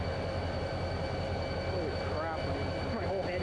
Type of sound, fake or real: real